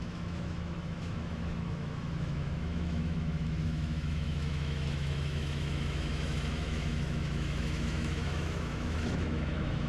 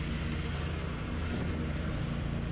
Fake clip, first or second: first